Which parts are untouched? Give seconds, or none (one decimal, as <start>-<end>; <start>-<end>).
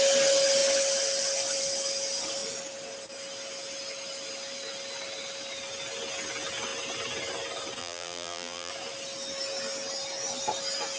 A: 0.0-7.8; 8.7-11.0